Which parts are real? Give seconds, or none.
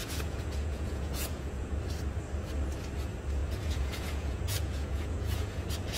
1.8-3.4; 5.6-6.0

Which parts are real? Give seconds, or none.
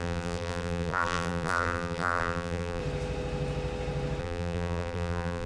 2.8-4.2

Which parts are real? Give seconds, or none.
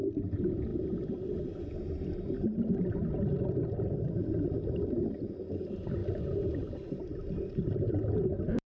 0.7-4.2; 6.0-6.9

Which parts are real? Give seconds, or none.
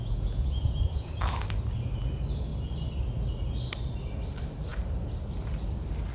1.1-6.1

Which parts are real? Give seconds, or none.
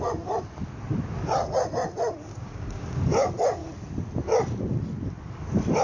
0.0-2.3; 3.0-5.8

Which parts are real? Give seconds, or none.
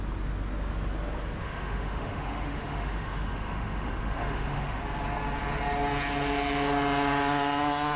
0.0-1.4; 4.8-8.0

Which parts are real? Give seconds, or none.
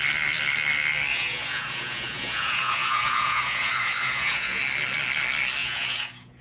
0.0-1.1; 4.6-5.6